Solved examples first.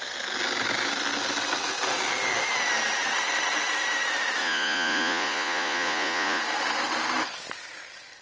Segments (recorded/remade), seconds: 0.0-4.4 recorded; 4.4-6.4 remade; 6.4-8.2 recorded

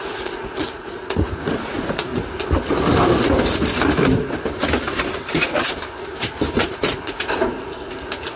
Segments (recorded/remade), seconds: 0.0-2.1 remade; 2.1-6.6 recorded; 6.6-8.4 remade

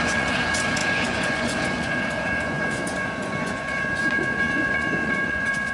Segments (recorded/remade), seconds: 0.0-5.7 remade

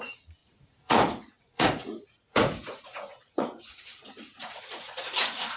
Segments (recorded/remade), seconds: 0.0-5.6 remade